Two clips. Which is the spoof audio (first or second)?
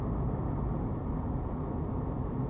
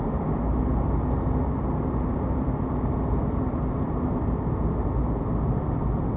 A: second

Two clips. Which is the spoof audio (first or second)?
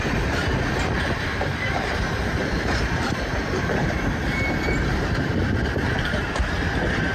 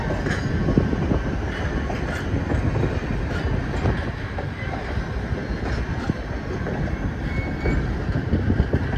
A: first